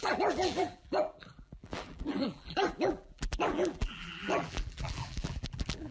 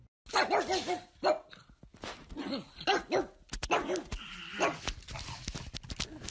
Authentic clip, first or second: second